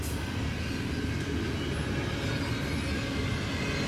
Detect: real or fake real